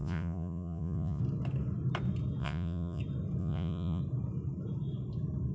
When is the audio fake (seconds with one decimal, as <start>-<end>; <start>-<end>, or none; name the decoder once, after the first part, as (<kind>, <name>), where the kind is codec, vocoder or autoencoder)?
0.0-1.2 (vocoder, Vocos); 2.4-3.0; 3.4-4.0